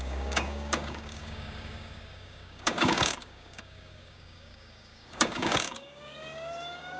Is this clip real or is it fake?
fake